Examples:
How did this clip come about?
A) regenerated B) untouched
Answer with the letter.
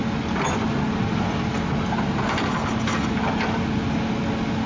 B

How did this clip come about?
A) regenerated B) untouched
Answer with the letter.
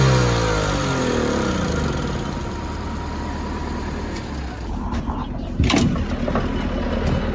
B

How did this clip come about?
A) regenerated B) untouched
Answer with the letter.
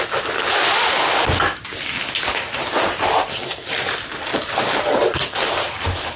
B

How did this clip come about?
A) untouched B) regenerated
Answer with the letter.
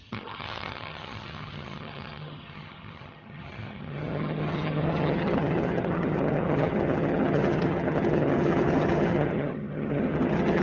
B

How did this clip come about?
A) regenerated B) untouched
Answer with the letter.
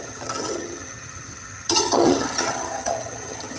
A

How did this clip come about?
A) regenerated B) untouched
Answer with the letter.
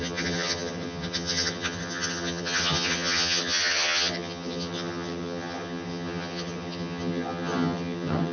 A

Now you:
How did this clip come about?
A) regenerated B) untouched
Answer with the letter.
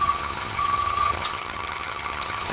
A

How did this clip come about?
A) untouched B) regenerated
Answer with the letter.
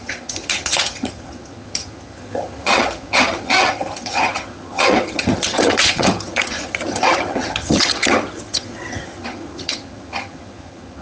B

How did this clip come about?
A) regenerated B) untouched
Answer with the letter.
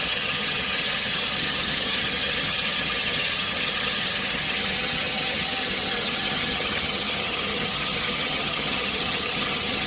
A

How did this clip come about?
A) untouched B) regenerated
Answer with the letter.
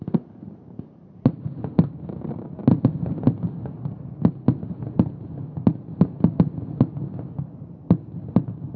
A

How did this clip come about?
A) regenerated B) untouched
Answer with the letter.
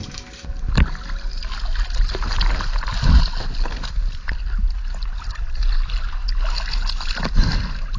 B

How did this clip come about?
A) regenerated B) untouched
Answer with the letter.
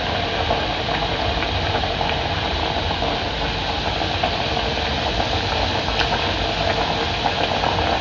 B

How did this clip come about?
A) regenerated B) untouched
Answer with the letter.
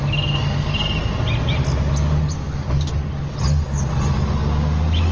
B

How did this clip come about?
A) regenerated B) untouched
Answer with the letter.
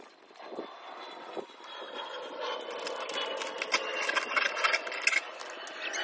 B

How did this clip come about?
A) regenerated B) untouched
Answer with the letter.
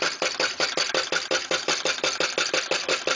B